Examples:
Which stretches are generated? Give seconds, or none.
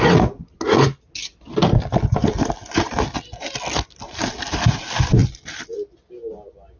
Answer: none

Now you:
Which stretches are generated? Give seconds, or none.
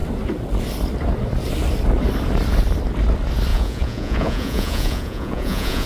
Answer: 3.5-5.9 (vocoder, Vocos)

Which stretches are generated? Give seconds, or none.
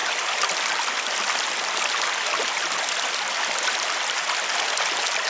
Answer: none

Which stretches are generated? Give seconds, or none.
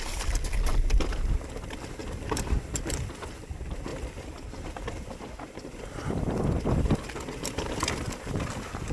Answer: none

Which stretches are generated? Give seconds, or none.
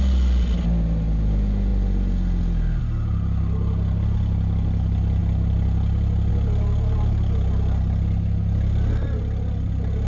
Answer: none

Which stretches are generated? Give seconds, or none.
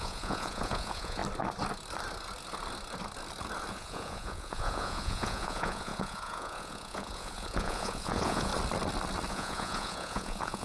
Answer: 0.0-1.2 (vocoder, Vocos); 3.7-8.5; 9.3-10.6